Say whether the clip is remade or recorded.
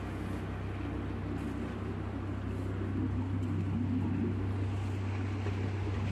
recorded